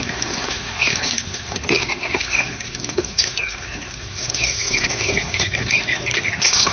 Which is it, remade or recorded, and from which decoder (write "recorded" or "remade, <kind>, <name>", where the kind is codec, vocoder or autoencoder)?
remade, codec, SNAC